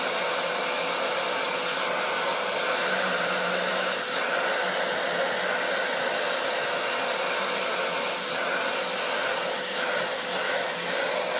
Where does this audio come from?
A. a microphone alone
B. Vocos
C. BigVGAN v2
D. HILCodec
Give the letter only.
A